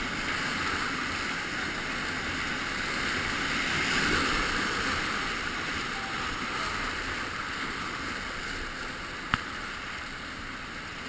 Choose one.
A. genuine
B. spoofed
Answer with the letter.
A